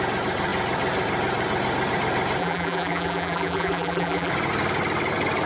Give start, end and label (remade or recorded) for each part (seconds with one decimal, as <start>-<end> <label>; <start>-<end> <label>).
0.0-2.4 recorded; 2.4-4.3 remade; 4.3-5.5 recorded